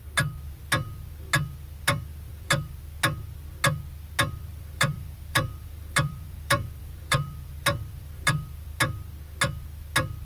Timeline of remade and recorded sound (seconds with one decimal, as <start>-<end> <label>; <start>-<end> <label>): 0.0-2.1 recorded; 2.1-2.8 remade; 2.8-4.5 recorded; 4.5-8.8 remade; 8.8-10.2 recorded